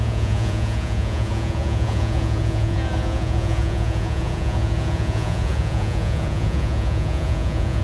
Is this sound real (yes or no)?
no